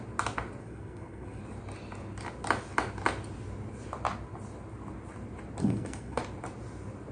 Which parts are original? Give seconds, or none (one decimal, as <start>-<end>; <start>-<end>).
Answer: 0.0-0.6; 1.4-5.6; 6.2-7.1